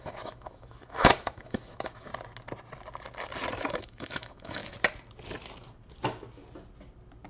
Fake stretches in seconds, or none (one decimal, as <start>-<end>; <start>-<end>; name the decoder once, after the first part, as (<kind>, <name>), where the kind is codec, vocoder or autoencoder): 0.0-2.1 (autoencoder, DAC-VAE); 3.5-4.6